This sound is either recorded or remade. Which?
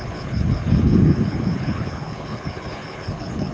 remade